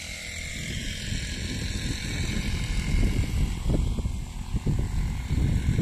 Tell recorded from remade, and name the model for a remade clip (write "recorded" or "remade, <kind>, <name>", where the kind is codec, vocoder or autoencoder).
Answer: recorded